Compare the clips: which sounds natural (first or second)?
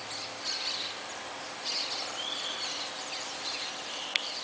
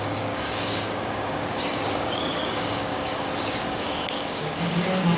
first